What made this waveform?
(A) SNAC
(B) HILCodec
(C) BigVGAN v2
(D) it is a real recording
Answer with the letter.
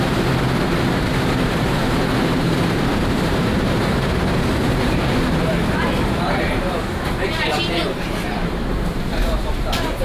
C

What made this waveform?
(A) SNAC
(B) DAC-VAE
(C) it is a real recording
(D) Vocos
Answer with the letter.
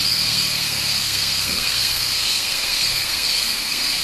A